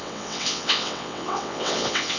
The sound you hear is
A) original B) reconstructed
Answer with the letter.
B